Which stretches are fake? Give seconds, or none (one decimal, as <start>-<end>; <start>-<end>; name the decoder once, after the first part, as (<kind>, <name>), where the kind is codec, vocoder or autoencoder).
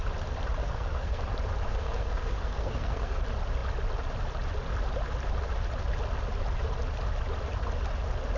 0.6-1.2 (codec, SNAC); 1.7-3.2